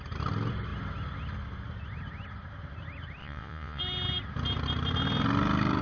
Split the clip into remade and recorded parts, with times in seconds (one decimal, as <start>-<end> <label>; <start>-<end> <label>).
0.0-3.2 recorded; 3.2-3.8 remade; 3.8-5.8 recorded